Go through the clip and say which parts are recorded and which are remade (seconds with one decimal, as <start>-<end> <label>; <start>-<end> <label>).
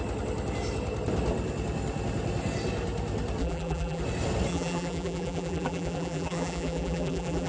0.0-3.4 recorded; 3.4-4.0 remade; 4.0-4.5 recorded; 4.5-7.5 remade